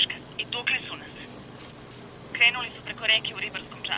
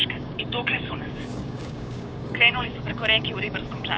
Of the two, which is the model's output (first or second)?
second